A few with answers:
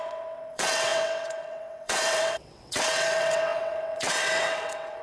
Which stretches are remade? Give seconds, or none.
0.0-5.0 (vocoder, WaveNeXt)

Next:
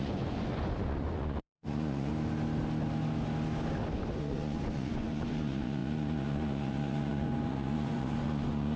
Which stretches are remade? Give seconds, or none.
0.0-2.1 (vocoder, Vocos); 4.2-8.8

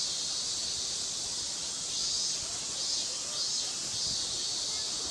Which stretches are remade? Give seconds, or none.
none

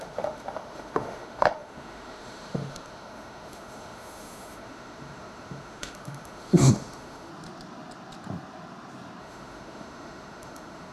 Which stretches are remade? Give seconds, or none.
0.0-7.3 (autoencoder, DAC-VAE); 9.2-10.9